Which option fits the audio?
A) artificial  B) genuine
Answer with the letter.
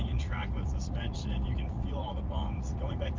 A